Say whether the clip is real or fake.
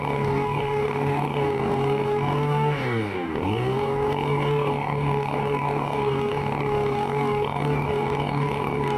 fake